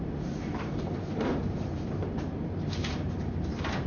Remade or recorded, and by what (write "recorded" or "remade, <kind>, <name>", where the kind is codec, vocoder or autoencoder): remade, vocoder, BigVGAN v2